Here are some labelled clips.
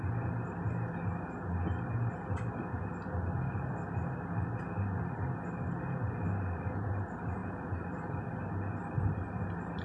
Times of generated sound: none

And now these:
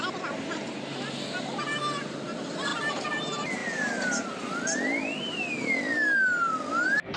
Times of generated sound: none

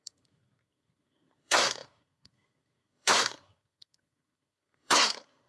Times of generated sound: 0.0-5.5 (codec, SNAC)

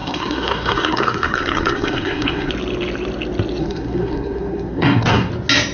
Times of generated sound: 0.0-2.5 (codec, SNAC); 3.6-5.3

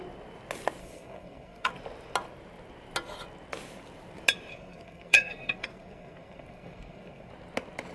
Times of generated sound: 0.8-1.7 (codec, SNAC); 4.5-7.3